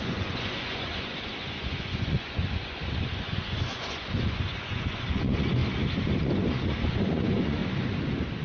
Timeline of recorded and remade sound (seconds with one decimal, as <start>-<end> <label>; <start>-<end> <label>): 0.0-5.6 remade; 5.6-6.2 recorded; 6.2-7.6 remade; 7.6-8.4 recorded